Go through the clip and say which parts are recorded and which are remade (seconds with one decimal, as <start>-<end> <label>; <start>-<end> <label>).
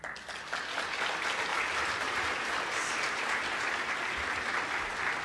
0.0-1.5 recorded; 1.5-4.6 remade; 4.6-5.2 recorded